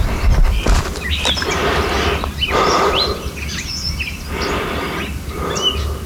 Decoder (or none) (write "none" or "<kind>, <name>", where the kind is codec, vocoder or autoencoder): none